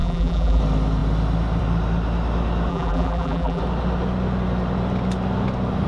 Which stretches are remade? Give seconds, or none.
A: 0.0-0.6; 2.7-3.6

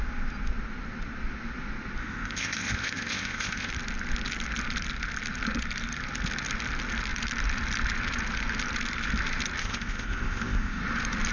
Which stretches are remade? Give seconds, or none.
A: 2.0-3.7; 9.6-10.8

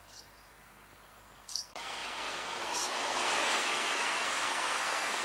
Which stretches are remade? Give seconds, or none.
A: 0.0-5.2